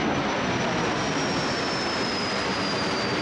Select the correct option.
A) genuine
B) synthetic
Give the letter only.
A